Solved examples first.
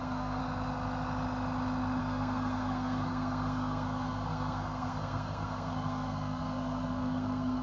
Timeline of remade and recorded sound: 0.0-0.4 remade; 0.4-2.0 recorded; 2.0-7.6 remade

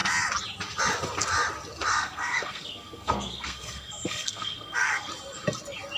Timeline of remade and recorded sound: 0.0-1.9 recorded; 1.9-5.1 remade; 5.1-6.0 recorded